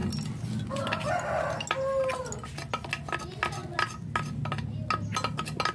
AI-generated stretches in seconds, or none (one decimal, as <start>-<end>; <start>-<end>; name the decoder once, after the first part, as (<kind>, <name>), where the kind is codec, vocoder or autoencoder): none